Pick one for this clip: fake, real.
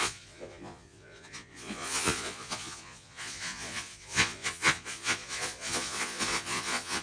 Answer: fake